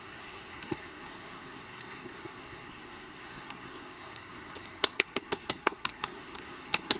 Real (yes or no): no